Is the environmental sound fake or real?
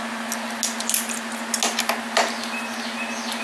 real